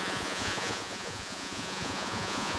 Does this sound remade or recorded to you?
remade